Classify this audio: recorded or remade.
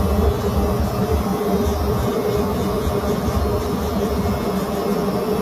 recorded